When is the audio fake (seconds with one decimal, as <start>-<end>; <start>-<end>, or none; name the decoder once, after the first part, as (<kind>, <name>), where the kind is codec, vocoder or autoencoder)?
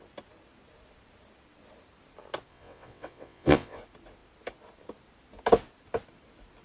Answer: 2.5-3.8 (vocoder, WaveNeXt)